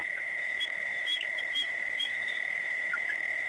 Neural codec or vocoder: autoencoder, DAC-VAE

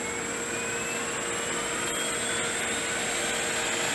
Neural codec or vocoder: none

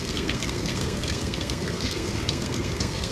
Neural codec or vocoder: codec, SNAC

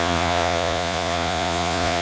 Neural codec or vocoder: vocoder, Vocos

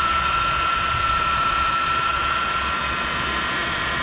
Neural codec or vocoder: vocoder, Vocos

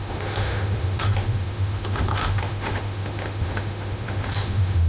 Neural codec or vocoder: autoencoder, DAC-VAE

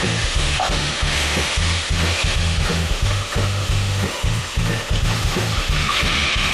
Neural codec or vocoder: autoencoder, DAC-VAE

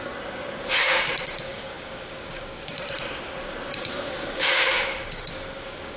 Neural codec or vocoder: codec, DAC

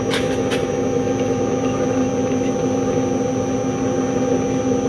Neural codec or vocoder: none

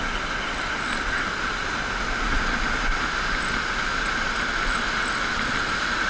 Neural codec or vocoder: none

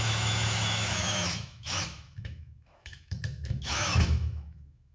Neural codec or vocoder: autoencoder, DAC-VAE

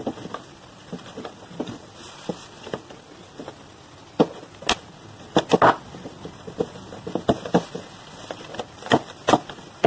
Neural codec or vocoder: none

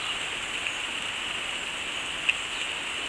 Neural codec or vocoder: none